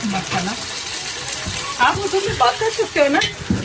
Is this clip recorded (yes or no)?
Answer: yes